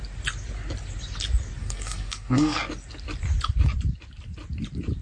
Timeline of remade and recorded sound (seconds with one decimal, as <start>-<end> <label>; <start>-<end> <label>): 0.0-1.6 recorded; 1.6-2.6 remade; 2.6-5.0 recorded